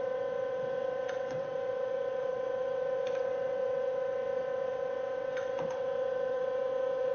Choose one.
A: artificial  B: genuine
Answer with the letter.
A